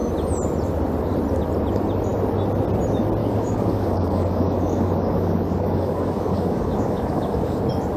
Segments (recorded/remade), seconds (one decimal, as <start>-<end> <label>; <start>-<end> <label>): 0.0-3.2 recorded; 3.2-7.6 remade; 7.6-8.0 recorded